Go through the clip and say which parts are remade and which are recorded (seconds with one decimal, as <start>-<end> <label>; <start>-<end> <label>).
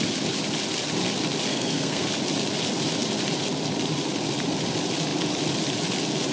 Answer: 0.0-1.5 recorded; 1.5-2.1 remade; 2.1-6.3 recorded